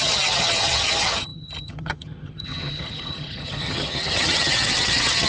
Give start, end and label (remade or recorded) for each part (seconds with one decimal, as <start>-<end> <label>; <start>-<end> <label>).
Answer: 0.0-5.3 remade